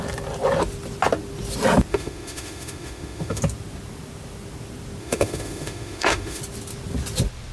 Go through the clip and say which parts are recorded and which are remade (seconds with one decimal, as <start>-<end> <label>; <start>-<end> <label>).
0.0-1.9 recorded; 1.9-3.4 remade; 3.4-5.0 recorded; 5.0-6.4 remade; 6.4-7.5 recorded